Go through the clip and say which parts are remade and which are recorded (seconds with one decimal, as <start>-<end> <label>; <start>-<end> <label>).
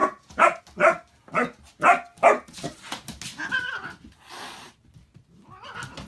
0.0-0.6 remade; 0.6-6.1 recorded